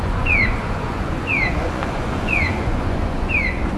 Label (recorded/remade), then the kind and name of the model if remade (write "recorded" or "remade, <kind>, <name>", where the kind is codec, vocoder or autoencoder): remade, vocoder, Vocos